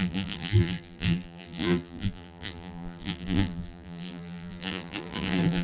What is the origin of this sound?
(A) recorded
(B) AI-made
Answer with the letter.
B